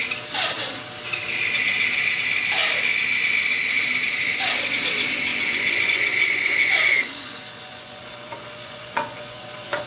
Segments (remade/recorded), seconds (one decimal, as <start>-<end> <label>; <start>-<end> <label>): 0.0-5.3 recorded; 5.3-9.9 remade